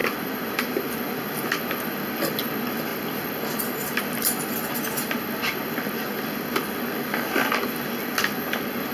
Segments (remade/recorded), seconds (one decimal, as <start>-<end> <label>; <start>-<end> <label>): 0.0-0.9 remade; 0.9-8.9 recorded